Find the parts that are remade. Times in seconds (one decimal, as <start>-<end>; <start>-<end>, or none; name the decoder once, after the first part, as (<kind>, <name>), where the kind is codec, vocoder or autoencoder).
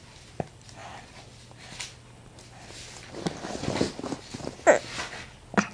none